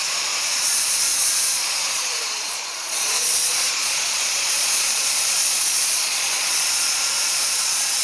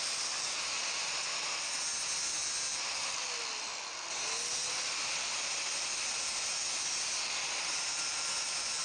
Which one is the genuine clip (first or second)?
second